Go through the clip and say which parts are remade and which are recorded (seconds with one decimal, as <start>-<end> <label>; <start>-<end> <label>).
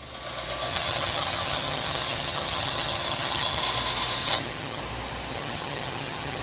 0.0-0.7 recorded; 0.7-3.6 remade; 3.6-4.2 recorded; 4.2-4.8 remade; 4.8-5.3 recorded; 5.3-6.4 remade